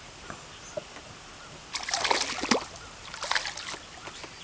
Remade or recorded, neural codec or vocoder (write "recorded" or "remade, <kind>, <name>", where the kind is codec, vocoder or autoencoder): recorded